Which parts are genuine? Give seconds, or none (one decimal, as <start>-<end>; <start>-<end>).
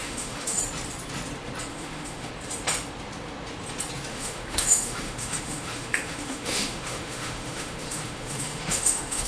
0.6-1.7; 2.3-4.1